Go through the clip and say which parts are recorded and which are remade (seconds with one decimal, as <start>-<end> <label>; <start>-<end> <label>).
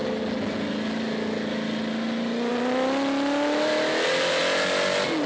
0.0-5.3 recorded